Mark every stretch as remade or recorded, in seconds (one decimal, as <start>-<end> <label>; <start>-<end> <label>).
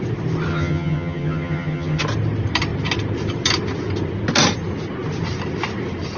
0.0-0.5 recorded; 0.5-2.0 remade; 2.0-6.2 recorded